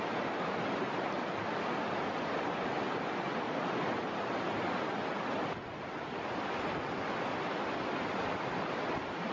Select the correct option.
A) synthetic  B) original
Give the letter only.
B